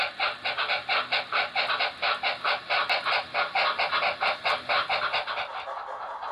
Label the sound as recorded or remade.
recorded